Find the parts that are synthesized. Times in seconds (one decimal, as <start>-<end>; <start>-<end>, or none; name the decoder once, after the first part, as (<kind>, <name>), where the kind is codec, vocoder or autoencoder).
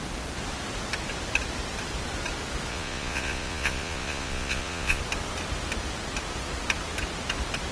2.7-5.0 (vocoder, Vocos)